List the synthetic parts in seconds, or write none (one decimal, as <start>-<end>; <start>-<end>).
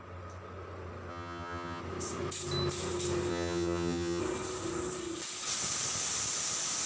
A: 1.1-1.8; 3.3-4.2